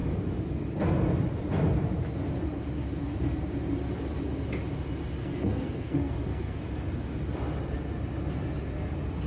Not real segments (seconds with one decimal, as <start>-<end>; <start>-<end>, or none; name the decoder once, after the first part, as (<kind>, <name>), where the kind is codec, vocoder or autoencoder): 5.2-6.6 (codec, SNAC)